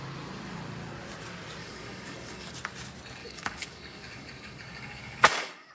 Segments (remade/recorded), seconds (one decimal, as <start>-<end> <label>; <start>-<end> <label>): 0.0-1.6 recorded; 1.6-2.5 remade; 2.5-3.2 recorded; 3.2-5.7 remade